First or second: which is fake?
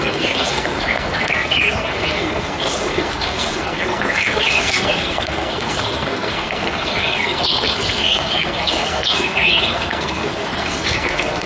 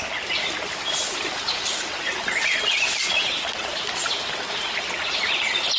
first